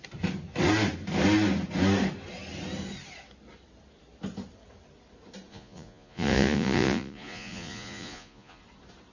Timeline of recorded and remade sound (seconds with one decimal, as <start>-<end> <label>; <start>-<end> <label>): 0.0-5.5 recorded; 5.5-8.6 remade; 8.6-9.1 recorded